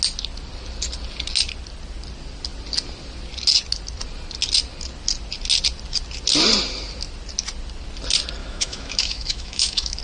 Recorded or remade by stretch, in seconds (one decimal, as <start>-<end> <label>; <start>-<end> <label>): 0.0-8.4 recorded; 8.4-10.0 remade